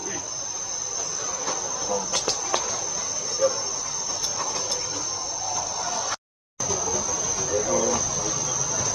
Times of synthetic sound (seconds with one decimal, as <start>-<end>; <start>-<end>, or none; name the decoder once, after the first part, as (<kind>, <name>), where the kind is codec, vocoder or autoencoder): none